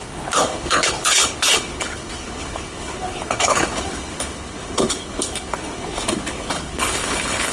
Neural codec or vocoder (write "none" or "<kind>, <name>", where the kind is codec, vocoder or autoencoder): codec, HILCodec